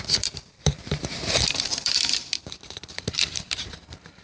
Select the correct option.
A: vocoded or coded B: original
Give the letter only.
A